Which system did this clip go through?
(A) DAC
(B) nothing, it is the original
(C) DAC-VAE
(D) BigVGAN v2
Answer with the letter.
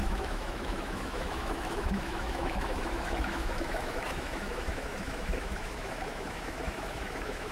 C